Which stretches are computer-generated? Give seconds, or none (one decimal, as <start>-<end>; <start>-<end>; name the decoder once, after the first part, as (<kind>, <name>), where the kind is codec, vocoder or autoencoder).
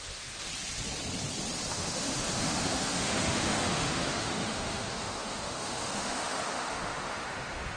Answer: 0.0-0.5 (autoencoder, DAC-VAE); 1.7-7.8